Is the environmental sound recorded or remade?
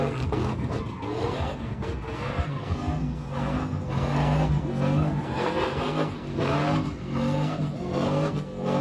remade